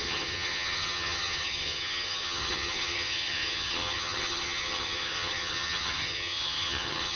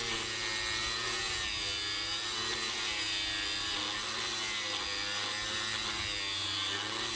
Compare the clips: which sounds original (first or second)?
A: second